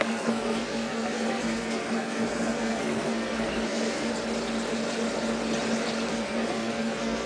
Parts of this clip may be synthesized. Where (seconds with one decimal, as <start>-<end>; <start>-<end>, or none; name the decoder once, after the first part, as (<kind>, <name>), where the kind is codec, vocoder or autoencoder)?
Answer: 0.0-4.1 (codec, SNAC); 6.1-7.3